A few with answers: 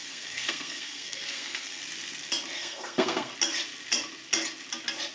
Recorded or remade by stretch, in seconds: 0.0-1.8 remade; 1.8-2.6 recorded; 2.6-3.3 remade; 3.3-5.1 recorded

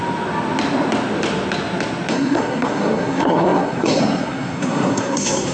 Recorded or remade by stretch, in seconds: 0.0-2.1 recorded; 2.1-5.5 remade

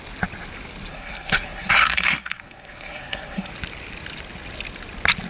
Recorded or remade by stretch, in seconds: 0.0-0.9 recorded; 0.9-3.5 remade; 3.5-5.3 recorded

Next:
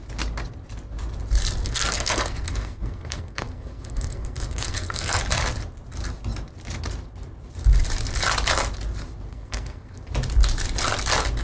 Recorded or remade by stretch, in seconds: 0.0-1.6 recorded; 1.6-5.2 remade; 5.2-9.3 recorded; 9.3-10.0 remade; 10.0-11.4 recorded